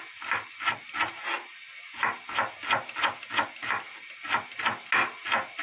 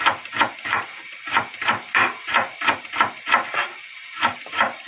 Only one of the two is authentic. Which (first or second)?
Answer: first